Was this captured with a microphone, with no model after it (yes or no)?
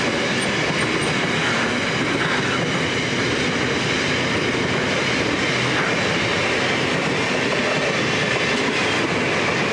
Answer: yes